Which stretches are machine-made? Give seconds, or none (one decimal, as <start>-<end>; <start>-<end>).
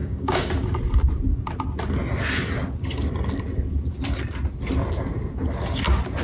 0.0-0.5